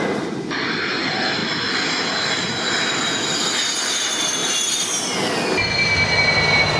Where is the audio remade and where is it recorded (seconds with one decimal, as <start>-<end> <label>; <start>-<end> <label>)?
0.0-6.8 recorded